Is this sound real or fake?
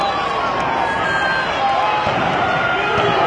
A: real